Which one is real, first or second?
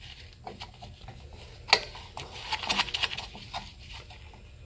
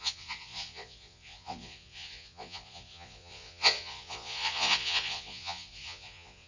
first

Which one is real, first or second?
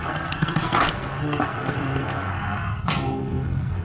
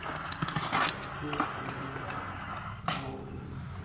second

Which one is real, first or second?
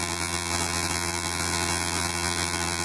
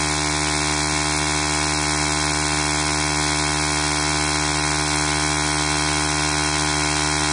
second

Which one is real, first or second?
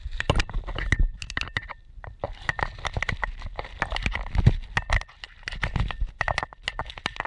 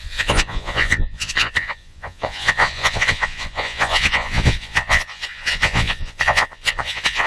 first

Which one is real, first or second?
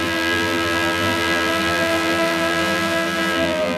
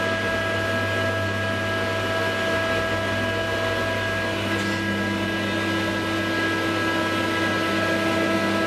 second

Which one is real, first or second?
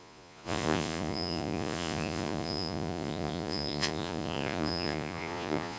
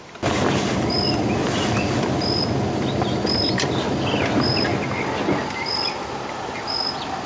second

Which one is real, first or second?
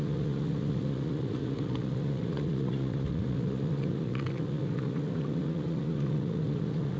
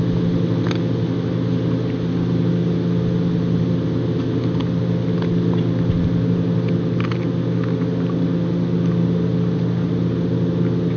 second